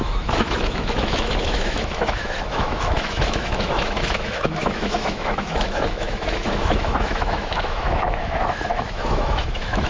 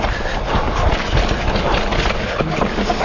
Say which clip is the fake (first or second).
first